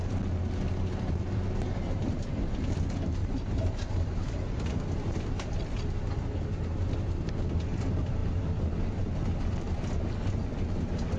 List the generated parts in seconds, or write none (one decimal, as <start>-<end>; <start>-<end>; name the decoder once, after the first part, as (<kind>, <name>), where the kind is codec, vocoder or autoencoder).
3.2-4.7 (vocoder, BigVGAN v2)